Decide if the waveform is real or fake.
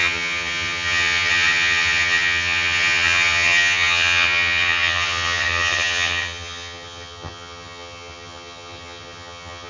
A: fake